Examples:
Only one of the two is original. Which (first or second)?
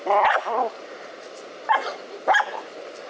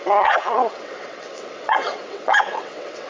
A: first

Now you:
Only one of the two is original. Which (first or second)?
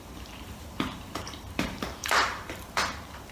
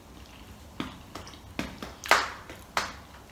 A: second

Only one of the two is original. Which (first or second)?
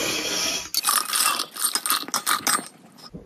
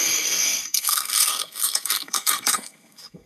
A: first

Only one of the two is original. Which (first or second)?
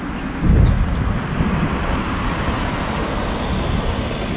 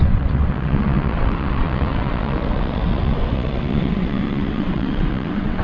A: first